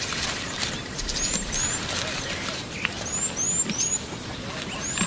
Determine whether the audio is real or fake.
real